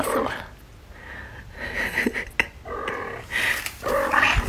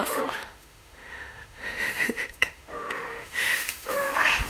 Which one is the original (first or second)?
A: first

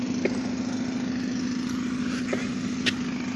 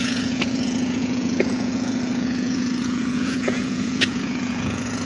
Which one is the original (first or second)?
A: first